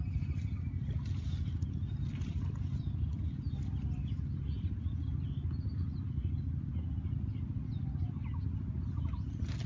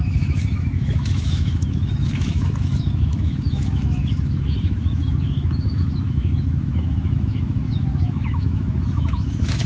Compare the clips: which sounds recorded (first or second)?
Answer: first